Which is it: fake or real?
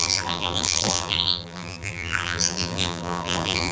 fake